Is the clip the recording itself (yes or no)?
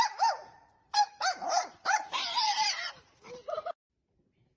no